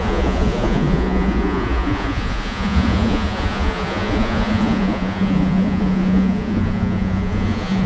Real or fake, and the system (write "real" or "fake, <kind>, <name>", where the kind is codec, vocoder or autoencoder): fake, vocoder, Vocos